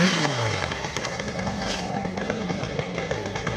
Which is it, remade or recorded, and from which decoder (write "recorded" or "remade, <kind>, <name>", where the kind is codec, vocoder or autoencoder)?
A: remade, codec, SNAC